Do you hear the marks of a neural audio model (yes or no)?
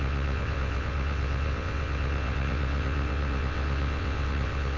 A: yes